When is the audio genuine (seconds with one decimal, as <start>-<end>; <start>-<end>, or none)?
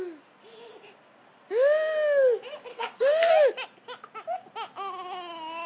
0.0-2.7; 3.3-5.7